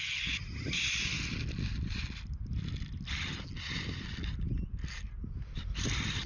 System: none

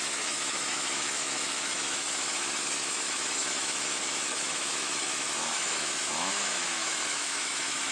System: autoencoder, DAC-VAE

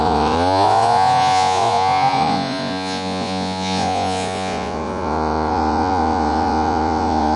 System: vocoder, Vocos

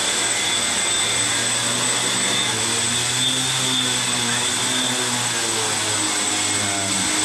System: none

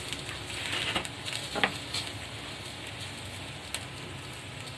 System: none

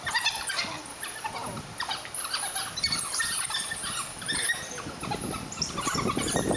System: none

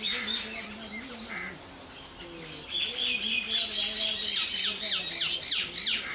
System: none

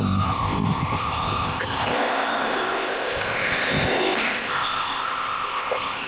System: codec, ZipCodec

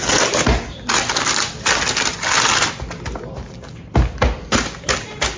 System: none